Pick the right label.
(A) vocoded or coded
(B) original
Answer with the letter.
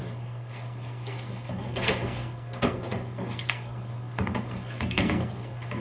A